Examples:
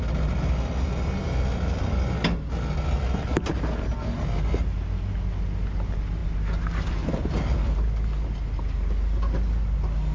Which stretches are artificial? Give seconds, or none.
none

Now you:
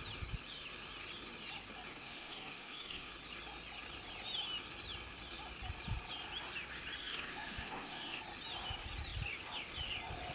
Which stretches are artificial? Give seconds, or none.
1.9-3.1 (autoencoder, DAC-VAE); 7.0-8.2

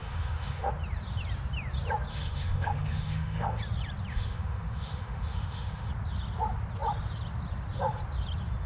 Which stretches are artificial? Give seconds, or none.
0.0-0.7 (autoencoder, DAC-VAE); 2.1-3.6; 4.1-5.9

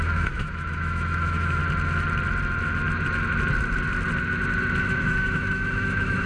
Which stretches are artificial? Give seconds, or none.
0.0-1.6 (autoencoder, DAC-VAE); 4.8-6.3

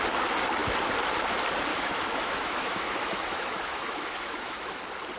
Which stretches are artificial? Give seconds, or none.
1.7-4.8 (autoencoder, DAC-VAE)

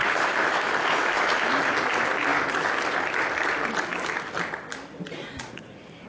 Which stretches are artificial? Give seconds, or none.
0.0-1.7 (autoencoder, DAC-VAE)

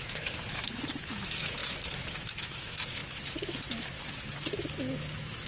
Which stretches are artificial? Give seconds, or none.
0.0-5.5 (autoencoder, DAC-VAE)

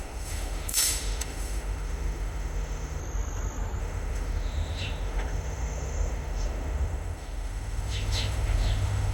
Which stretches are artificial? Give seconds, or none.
0.0-3.0 (autoencoder, DAC-VAE); 3.8-9.1